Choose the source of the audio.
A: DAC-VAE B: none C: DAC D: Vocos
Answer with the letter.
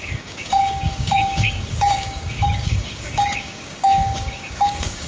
C